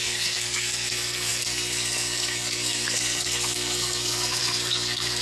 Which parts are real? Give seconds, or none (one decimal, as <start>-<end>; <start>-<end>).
none